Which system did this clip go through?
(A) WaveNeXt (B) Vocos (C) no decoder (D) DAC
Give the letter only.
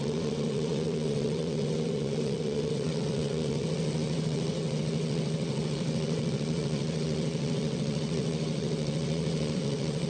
A